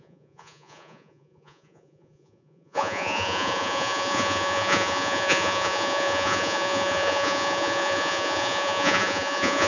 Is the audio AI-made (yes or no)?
yes